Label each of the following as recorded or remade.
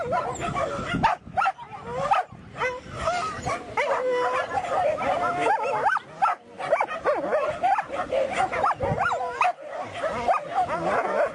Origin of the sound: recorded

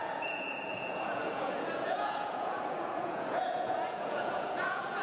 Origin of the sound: remade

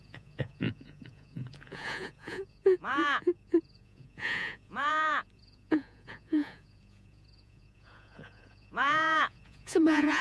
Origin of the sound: remade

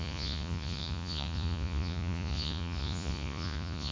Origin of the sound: remade